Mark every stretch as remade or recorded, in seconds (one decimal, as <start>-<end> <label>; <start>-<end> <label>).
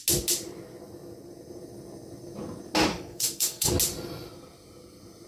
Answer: 0.0-2.9 recorded; 2.9-3.7 remade; 3.7-5.3 recorded